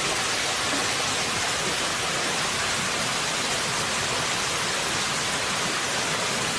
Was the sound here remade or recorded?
recorded